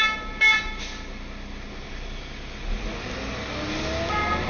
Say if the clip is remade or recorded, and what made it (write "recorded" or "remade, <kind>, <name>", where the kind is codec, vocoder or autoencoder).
recorded